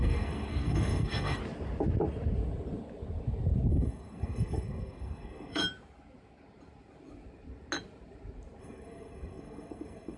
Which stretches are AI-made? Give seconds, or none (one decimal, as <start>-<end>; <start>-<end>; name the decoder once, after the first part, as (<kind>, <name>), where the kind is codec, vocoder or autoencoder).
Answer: 0.0-1.4 (codec, SNAC); 3.7-5.6; 8.6-10.2